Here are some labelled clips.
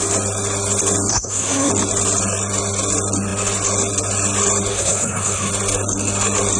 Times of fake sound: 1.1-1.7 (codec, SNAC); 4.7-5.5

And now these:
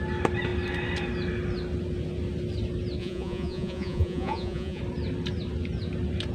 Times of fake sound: 3.0-4.8 (vocoder, Vocos)

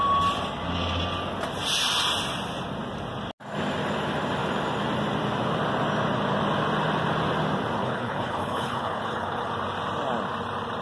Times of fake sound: 7.8-9.5 (codec, HILCodec)

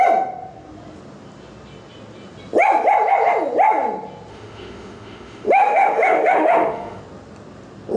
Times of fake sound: 4.3-7.0 (autoencoder, DAC-VAE)

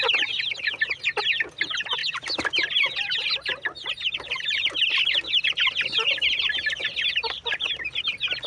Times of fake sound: none

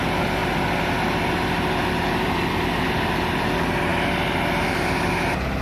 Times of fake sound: none